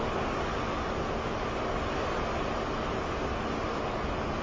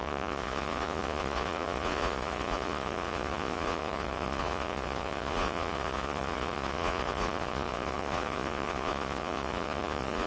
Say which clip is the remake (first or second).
second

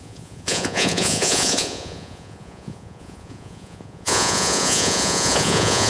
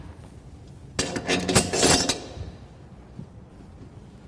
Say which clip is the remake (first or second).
first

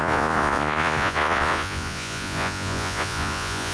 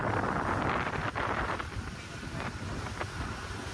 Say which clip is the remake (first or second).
first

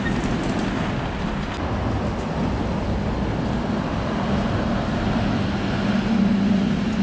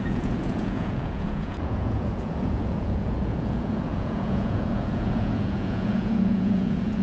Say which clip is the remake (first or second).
second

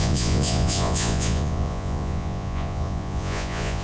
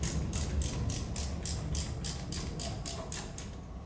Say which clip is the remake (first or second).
first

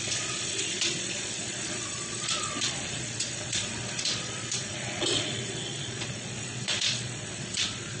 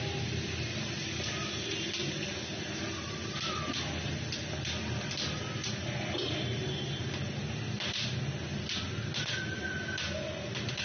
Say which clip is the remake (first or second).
first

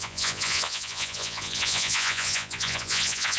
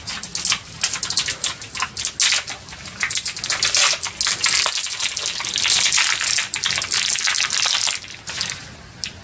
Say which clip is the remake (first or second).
first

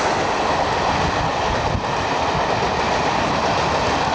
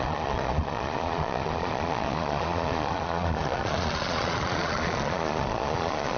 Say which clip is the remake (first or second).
second